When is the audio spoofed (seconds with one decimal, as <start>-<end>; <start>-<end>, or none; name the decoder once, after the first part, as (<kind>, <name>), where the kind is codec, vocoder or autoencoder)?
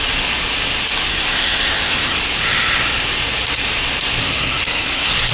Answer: 1.1-2.2 (codec, SNAC); 4.2-5.3